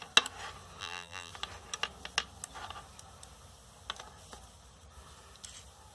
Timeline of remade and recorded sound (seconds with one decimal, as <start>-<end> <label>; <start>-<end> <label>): 0.0-0.8 recorded; 0.8-1.3 remade; 1.3-5.9 recorded